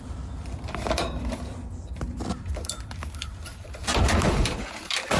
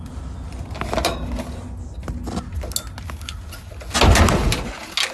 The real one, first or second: second